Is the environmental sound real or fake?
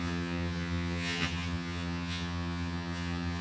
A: fake